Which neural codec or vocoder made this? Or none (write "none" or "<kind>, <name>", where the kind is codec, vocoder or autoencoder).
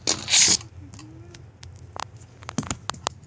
none